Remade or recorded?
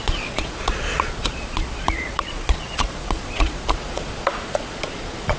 remade